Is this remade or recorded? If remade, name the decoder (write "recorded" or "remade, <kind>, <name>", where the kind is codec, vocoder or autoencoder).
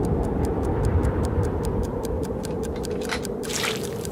remade, vocoder, BigVGAN v2